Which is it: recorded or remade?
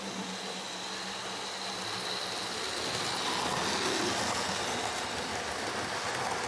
recorded